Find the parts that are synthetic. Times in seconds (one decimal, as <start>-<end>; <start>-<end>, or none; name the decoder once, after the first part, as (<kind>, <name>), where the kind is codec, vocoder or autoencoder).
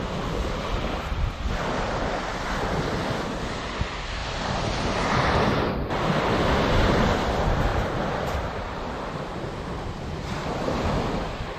none